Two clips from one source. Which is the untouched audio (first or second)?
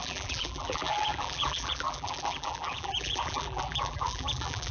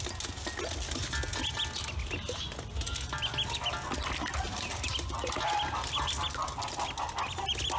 second